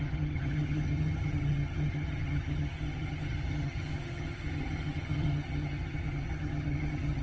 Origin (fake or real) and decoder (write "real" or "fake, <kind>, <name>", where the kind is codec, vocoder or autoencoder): fake, vocoder, HiFi-GAN